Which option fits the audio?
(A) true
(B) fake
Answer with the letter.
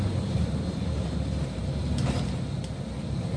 A